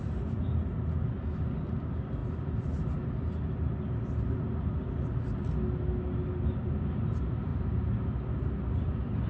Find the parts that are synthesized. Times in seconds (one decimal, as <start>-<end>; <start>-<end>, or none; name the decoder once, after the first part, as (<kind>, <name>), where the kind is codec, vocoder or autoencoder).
0.0-2.2 (vocoder, BigVGAN v2); 6.4-7.5; 8.8-9.3